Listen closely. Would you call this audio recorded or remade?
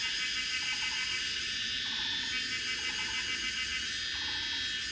recorded